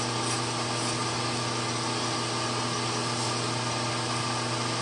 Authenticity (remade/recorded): recorded